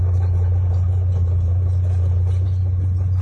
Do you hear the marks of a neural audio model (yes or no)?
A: no